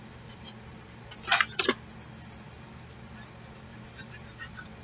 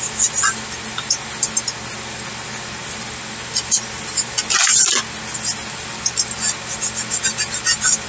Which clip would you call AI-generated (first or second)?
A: first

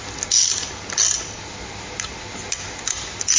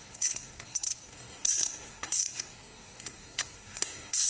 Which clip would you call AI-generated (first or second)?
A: second